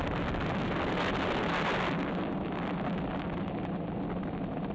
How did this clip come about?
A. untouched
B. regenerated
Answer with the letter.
A